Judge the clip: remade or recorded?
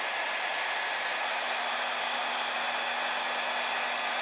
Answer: recorded